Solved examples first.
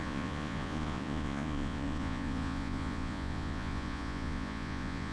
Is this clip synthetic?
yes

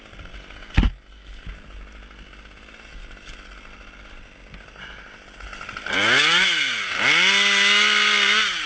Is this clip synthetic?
no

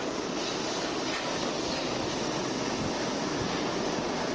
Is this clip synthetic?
no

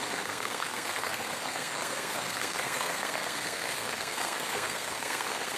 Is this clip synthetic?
yes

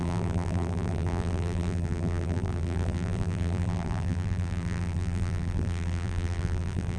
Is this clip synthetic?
yes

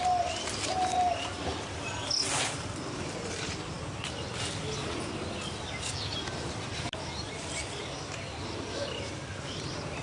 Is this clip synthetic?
no